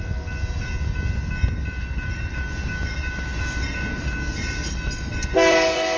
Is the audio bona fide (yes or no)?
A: yes